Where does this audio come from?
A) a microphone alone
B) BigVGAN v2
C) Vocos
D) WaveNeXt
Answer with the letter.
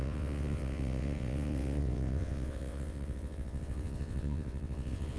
D